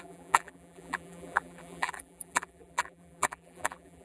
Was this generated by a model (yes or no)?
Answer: yes